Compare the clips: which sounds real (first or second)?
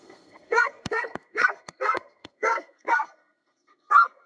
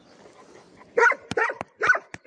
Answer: second